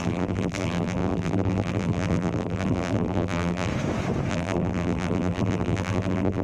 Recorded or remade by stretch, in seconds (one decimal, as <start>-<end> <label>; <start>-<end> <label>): 0.0-3.7 remade; 3.7-4.3 recorded; 4.3-6.4 remade